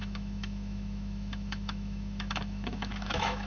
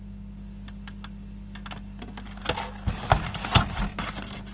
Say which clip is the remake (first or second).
first